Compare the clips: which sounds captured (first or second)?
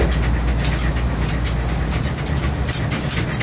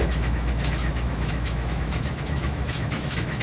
first